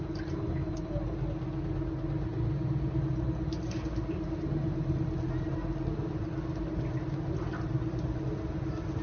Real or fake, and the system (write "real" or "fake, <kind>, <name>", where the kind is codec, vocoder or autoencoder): real